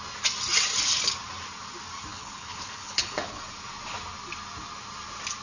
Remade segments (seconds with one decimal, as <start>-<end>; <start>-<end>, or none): 2.1-3.4